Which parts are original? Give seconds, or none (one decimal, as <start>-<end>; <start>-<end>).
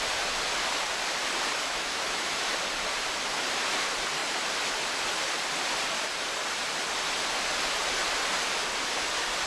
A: 0.0-1.6; 2.3-9.5